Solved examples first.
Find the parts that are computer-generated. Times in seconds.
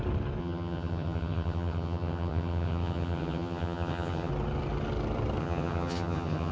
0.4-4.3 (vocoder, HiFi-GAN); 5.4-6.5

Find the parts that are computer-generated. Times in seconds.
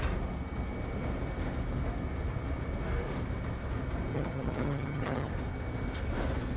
4.1-5.3 (vocoder, HiFi-GAN)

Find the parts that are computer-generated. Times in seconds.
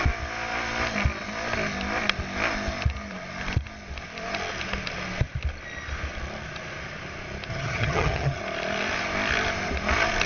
7.5-8.4 (vocoder, HiFi-GAN)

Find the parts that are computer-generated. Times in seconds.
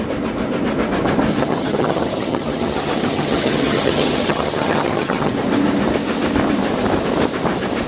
1.3-5.3 (vocoder, HiFi-GAN)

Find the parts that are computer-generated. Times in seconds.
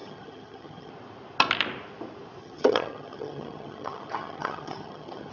0.0-0.9 (vocoder, HiFi-GAN); 2.4-5.3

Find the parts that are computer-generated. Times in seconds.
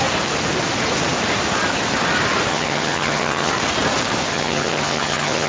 2.5-3.5 (vocoder, HiFi-GAN); 4.3-5.5